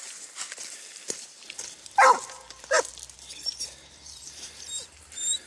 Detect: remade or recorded remade